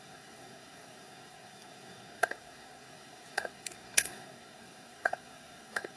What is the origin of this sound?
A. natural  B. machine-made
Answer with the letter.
B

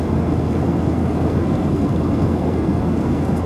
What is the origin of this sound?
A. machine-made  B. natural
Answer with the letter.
A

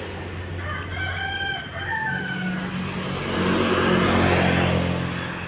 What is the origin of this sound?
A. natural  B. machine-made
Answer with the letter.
A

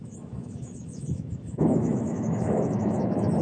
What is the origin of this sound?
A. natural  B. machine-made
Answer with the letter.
B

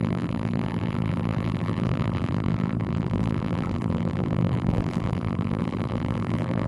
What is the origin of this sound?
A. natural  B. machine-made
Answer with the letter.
B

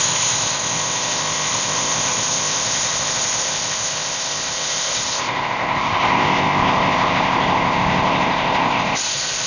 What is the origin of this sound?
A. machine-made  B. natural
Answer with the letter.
A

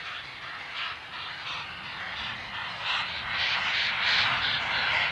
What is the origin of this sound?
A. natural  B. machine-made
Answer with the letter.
A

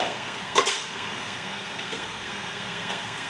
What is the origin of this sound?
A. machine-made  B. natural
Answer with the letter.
A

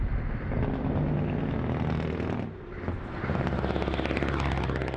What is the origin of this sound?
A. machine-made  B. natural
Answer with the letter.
B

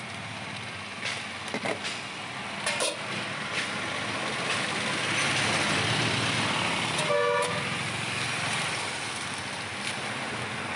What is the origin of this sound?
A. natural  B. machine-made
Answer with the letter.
A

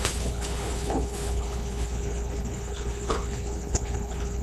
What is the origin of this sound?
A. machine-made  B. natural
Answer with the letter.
A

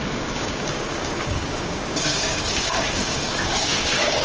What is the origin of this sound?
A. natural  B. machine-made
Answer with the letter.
B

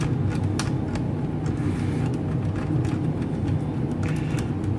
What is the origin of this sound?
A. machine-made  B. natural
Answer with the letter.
B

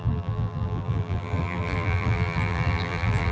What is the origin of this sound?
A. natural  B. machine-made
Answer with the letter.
B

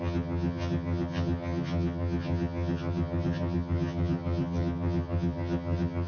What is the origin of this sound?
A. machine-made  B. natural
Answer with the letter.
A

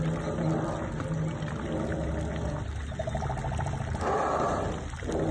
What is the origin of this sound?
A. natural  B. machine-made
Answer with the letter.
A